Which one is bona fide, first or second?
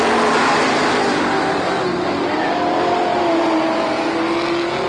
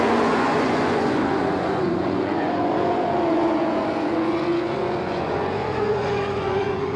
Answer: first